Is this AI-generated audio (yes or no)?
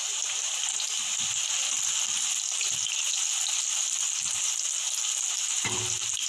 no